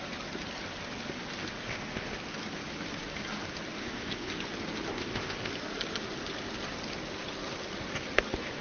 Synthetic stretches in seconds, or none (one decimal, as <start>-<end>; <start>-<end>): 1.4-2.1; 3.8-4.3; 4.9-5.5